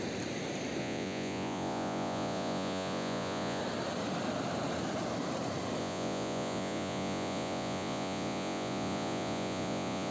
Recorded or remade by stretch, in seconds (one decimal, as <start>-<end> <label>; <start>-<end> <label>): 0.0-0.8 recorded; 0.8-3.6 remade; 3.6-5.8 recorded; 5.8-10.1 remade